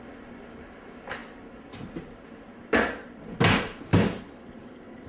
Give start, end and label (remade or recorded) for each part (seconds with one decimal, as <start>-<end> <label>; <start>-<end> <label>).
0.0-5.1 recorded